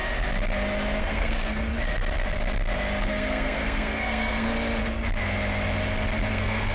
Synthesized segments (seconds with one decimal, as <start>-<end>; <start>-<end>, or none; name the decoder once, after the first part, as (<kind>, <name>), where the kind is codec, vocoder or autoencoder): 1.0-1.7 (codec, SNAC); 3.0-4.5; 6.3-6.7